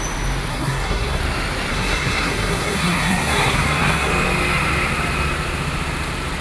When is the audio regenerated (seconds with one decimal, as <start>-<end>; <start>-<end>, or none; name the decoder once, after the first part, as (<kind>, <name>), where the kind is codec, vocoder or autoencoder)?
0.5-1.2 (codec, SNAC); 1.7-4.1